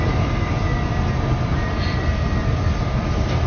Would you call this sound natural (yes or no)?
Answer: yes